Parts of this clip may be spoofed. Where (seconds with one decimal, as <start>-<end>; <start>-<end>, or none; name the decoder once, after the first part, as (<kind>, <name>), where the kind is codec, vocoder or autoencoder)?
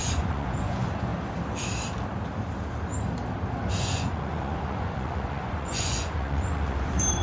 0.0-1.1 (vocoder, Vocos); 3.8-7.2